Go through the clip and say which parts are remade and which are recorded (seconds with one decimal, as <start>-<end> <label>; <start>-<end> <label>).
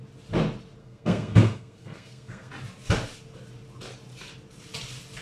0.0-0.8 recorded; 0.8-2.5 remade; 2.5-5.2 recorded